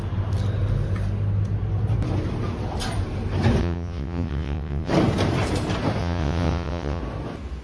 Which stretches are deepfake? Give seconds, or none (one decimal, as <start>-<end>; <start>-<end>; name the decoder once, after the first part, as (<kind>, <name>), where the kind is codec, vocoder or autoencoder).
3.6-4.9 (vocoder, WaveNeXt); 6.0-7.0